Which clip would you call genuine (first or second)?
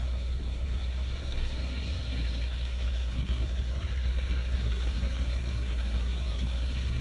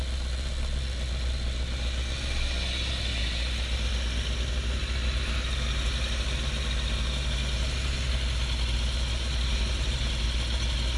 second